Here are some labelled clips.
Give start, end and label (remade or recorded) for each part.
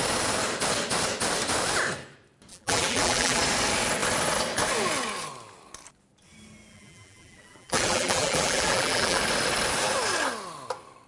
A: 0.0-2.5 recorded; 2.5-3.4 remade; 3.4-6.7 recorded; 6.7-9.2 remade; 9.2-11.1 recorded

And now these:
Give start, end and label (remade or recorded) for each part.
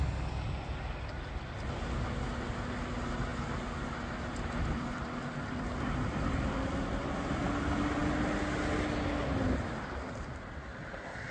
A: 0.0-11.3 recorded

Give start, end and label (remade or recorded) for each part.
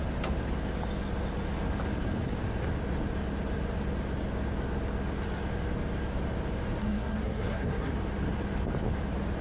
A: 0.0-6.8 recorded; 6.8-7.9 remade; 7.9-9.4 recorded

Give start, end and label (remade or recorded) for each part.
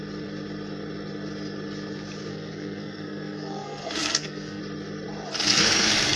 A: 0.0-2.3 recorded; 2.3-4.6 remade; 4.6-5.5 recorded; 5.5-6.2 remade